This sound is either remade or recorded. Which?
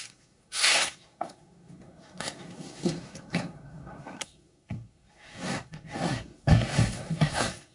remade